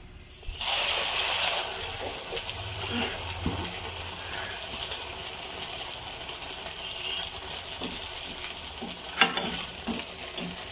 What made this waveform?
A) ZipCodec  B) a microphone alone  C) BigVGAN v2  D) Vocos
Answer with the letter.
B